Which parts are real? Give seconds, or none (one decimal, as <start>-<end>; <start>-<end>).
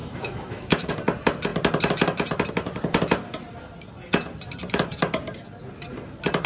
0.9-6.5